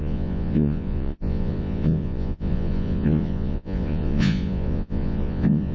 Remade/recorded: remade